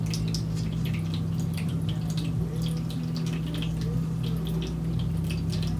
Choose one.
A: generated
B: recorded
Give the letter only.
B